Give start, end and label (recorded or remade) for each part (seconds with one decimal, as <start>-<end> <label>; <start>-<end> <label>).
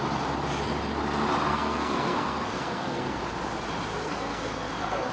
0.0-1.5 recorded; 1.5-3.2 remade; 3.2-4.0 recorded; 4.0-5.1 remade